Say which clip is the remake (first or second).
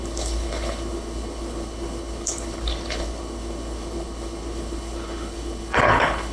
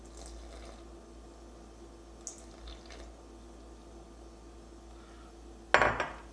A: first